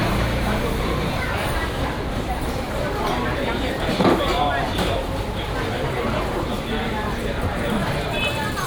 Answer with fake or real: fake